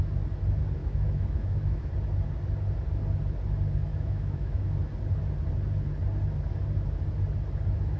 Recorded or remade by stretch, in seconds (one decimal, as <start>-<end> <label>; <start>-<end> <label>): 0.0-0.8 recorded; 0.8-1.9 remade; 1.9-3.9 recorded; 3.9-4.7 remade; 4.7-8.0 recorded